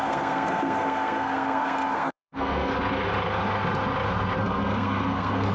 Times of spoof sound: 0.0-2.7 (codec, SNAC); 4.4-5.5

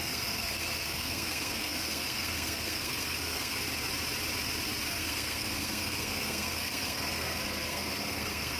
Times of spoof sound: 0.0-3.5 (codec, SNAC); 4.9-8.6

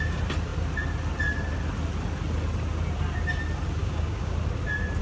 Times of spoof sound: 3.8-4.3 (codec, DAC)

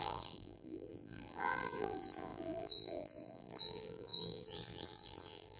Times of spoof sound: 0.0-5.6 (vocoder, BigVGAN v2)